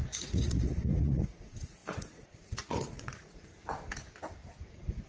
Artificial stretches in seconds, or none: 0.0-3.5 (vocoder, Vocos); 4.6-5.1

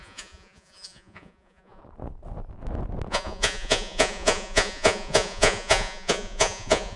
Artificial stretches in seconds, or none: 0.0-1.8 (vocoder, Vocos); 3.1-7.0

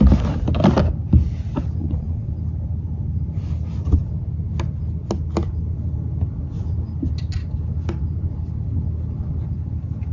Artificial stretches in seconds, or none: 1.8-2.4 (vocoder, WaveNeXt)

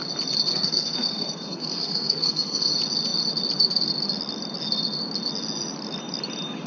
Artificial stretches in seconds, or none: 0.5-2.7 (codec, SNAC)